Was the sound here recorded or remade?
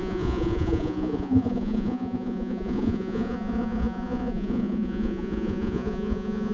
remade